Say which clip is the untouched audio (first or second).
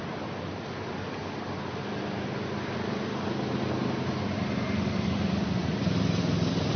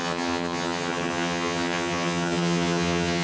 first